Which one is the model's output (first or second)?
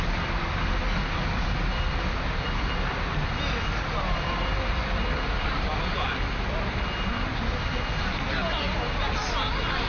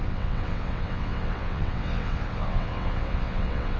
second